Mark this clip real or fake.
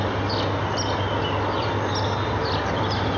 real